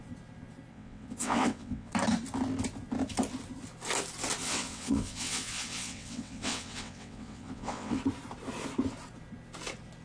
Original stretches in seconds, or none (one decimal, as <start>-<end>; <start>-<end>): 0.0-0.7; 1.9-4.4; 8.0-10.0

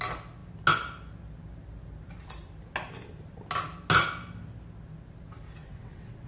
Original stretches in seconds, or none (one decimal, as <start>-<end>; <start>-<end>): 0.0-5.6

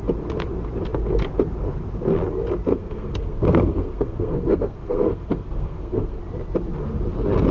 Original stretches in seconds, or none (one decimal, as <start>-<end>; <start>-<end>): 0.0-2.7; 6.2-7.5

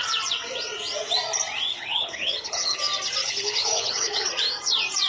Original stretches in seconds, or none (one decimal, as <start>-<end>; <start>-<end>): 0.0-1.7; 2.8-3.2; 4.3-5.1

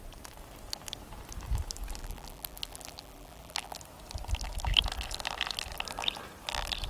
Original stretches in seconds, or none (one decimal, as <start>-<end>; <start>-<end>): 0.0-2.0; 3.8-6.9